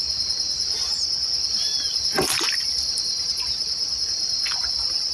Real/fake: real